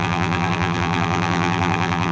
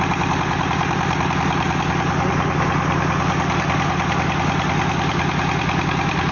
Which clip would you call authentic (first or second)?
second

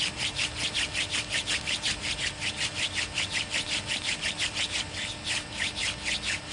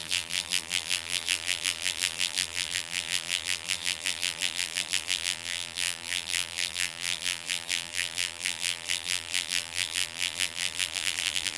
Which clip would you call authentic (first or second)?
first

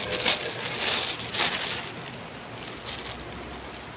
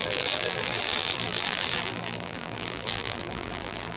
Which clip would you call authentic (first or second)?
first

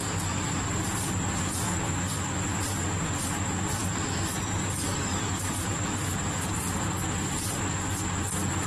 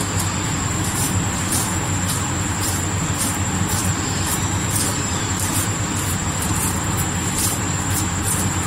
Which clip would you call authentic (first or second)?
first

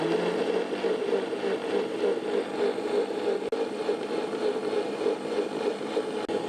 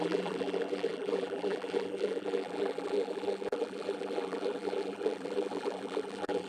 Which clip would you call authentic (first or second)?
first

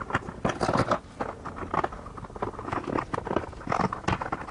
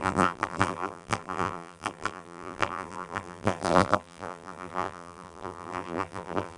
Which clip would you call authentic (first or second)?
first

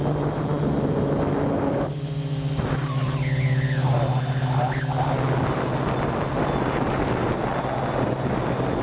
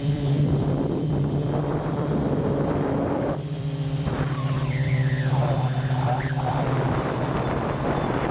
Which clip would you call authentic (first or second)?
first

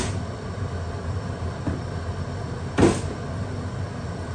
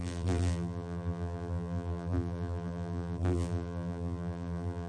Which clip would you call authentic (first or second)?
first